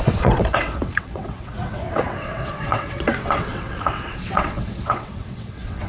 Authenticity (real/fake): fake